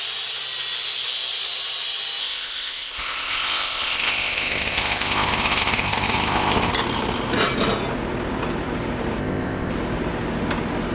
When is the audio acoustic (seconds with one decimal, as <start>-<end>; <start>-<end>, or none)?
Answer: 0.0-2.2; 6.7-9.2; 9.7-10.9